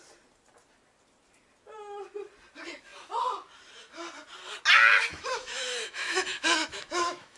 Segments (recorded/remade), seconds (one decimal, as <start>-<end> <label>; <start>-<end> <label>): 0.0-5.1 recorded; 5.1-7.4 remade